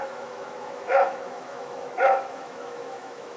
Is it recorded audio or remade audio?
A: remade